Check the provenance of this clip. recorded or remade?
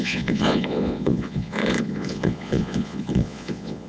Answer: remade